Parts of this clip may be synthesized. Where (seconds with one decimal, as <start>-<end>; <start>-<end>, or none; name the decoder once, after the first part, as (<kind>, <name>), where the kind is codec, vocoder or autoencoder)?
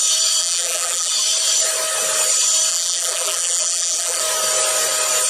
0.4-1.1 (vocoder, BigVGAN v2); 2.7-4.2